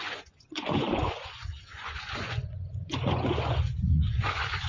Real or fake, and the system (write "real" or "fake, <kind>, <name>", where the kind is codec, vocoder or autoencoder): fake, vocoder, Vocos